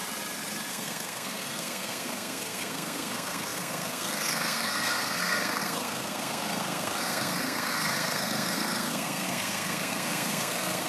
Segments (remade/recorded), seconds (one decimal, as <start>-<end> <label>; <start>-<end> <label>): 0.0-0.7 recorded; 0.7-10.9 remade